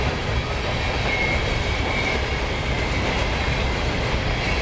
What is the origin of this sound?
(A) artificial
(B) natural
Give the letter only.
B